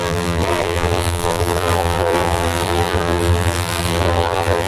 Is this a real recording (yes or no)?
no